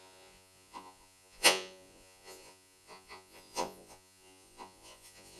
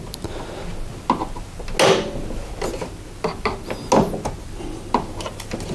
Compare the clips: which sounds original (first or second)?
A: second